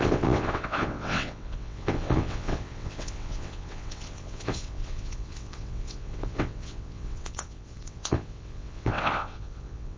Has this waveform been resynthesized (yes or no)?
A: yes